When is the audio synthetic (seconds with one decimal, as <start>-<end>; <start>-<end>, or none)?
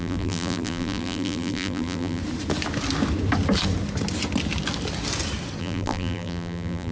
0.0-2.2; 5.6-6.9